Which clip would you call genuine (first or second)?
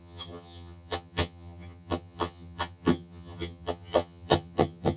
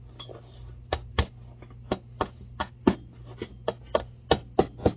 second